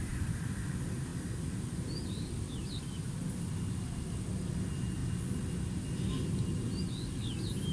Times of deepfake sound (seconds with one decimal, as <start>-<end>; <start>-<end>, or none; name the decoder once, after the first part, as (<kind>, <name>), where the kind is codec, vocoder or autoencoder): none